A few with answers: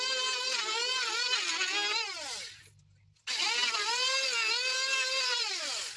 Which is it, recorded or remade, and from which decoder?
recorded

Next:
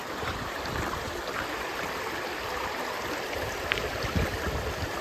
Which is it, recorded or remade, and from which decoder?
remade, vocoder, BigVGAN v2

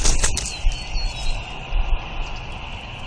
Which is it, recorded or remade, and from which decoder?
recorded